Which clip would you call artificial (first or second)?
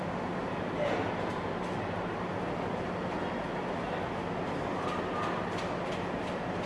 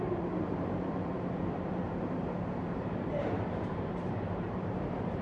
second